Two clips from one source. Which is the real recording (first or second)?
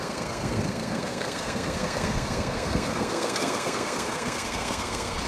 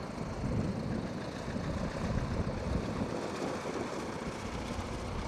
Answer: second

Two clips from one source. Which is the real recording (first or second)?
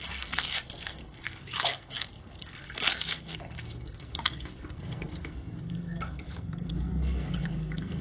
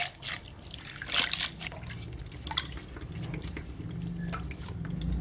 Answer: second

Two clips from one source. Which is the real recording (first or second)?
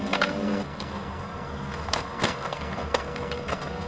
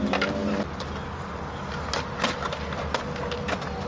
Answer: second